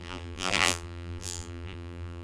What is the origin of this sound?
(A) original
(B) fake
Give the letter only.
B